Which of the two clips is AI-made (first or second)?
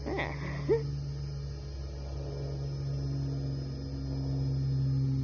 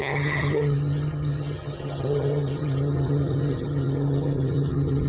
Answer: second